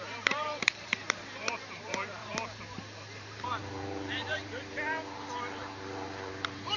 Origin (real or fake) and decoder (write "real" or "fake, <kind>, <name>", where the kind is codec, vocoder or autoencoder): fake, vocoder, BigVGAN v2